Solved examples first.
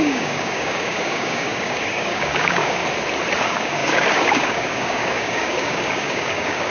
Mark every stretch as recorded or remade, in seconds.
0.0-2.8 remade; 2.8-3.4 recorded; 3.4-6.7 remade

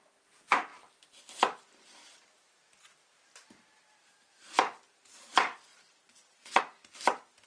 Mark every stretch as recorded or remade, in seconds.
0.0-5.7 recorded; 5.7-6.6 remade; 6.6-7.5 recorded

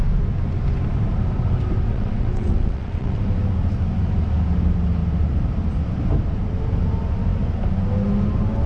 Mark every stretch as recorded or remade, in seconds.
0.0-1.9 recorded; 1.9-3.2 remade; 3.2-8.7 recorded